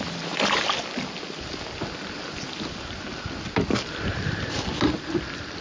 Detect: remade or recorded recorded